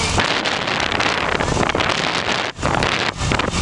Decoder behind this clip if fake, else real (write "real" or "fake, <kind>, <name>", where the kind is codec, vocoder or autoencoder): real